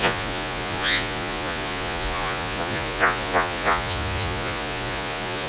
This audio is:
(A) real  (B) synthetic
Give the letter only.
B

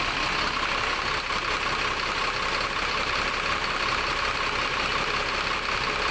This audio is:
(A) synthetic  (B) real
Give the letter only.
B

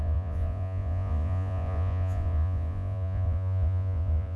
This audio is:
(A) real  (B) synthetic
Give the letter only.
B